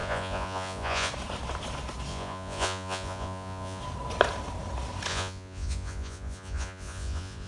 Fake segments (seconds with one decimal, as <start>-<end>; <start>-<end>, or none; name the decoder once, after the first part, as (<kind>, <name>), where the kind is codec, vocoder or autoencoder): 0.0-1.1 (vocoder, Vocos); 2.1-3.8; 5.1-7.5